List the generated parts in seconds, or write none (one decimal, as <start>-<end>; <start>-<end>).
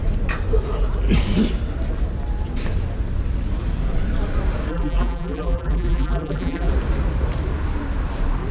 4.7-6.7